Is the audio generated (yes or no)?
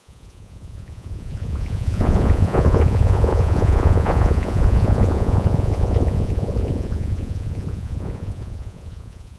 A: yes